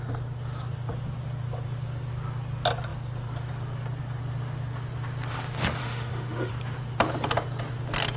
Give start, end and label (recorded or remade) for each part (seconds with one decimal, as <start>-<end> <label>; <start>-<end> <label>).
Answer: 0.0-5.8 recorded; 5.8-6.5 remade; 6.5-8.2 recorded